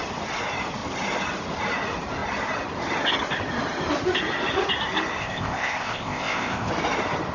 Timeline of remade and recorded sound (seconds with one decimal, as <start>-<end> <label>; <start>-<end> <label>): 0.0-5.2 recorded; 5.2-6.7 remade; 6.7-7.3 recorded

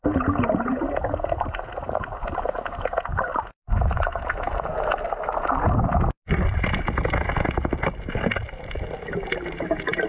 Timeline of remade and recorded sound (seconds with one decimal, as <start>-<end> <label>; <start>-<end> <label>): 0.0-3.1 recorded; 3.1-4.3 remade; 4.3-10.1 recorded

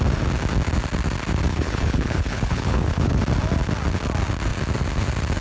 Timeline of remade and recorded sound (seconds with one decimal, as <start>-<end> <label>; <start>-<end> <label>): 0.0-1.5 recorded; 1.5-3.2 remade; 3.2-5.4 recorded

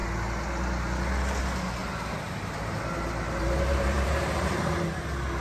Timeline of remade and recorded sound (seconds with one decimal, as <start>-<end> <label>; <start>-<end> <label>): 0.0-1.8 recorded; 1.8-5.0 remade; 5.0-5.4 recorded

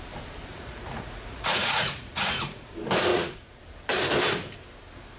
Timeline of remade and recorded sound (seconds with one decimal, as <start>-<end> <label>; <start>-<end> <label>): 0.0-0.5 recorded; 0.5-2.7 remade; 2.7-3.1 recorded; 3.1-3.6 remade; 3.6-5.2 recorded

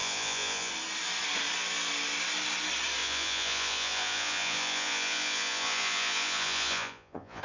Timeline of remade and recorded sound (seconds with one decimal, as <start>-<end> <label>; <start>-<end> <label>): 0.0-0.7 remade; 0.7-3.0 recorded; 3.0-7.4 remade

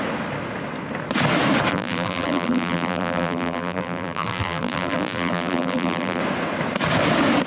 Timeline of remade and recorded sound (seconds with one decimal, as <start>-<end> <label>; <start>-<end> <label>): 0.0-1.7 recorded; 1.7-6.2 remade; 6.2-7.5 recorded

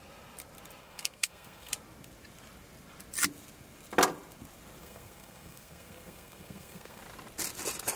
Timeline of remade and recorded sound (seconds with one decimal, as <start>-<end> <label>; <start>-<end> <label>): 0.0-0.8 recorded; 0.8-1.7 remade; 1.7-4.8 recorded; 4.8-7.0 remade; 7.0-8.0 recorded